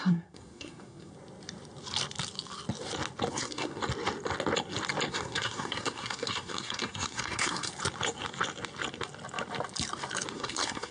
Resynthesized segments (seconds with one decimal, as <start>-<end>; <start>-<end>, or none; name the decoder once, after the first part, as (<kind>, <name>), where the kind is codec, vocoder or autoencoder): 0.0-1.1 (codec, SNAC); 3.3-3.8; 5.1-7.7; 10.3-10.9